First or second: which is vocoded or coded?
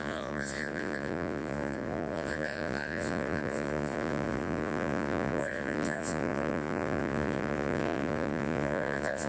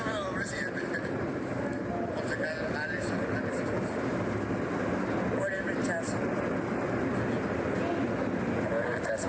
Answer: first